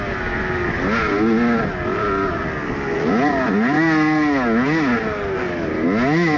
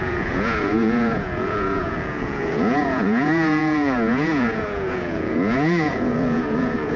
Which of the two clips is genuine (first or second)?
first